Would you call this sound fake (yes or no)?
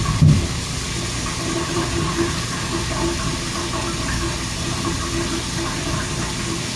no